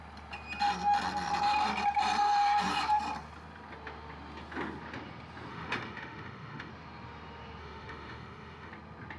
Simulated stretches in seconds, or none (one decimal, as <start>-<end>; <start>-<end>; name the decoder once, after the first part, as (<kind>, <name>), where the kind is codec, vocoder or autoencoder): 5.5-6.7 (autoencoder, DAC-VAE); 7.6-8.7